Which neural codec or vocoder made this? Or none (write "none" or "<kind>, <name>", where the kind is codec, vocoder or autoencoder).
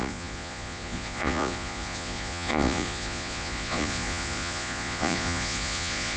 vocoder, Vocos